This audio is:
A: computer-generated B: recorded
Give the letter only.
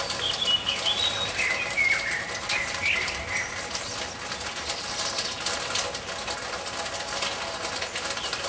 B